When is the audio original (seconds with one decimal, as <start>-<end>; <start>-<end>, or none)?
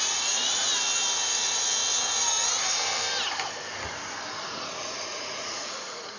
0.7-4.4